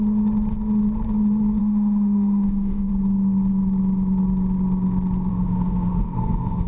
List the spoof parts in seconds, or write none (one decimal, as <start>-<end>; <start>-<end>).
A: 1.6-2.9; 5.3-6.7